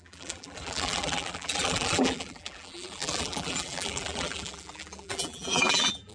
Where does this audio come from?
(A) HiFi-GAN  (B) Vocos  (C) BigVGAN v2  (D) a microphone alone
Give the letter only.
C